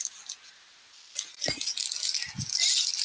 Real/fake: real